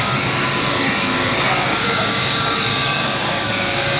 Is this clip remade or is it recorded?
remade